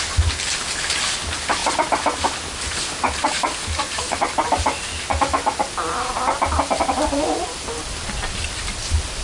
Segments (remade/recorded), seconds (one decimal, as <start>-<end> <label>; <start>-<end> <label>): 0.0-9.2 recorded